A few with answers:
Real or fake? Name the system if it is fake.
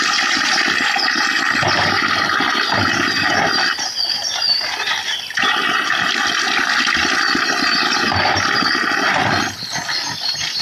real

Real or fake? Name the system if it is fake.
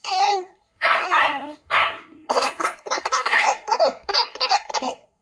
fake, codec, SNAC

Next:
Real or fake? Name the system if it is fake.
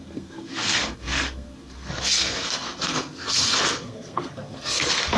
fake, codec, SNAC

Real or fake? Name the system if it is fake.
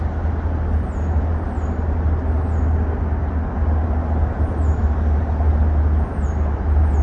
real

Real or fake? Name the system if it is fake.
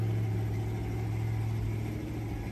real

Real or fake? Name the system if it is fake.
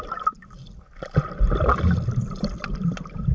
real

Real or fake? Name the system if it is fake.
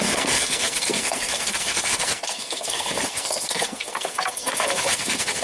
fake, codec, SNAC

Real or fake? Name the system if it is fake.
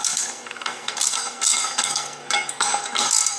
fake, codec, SNAC